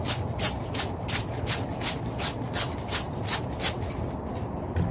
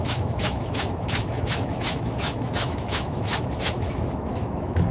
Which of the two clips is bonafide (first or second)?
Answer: first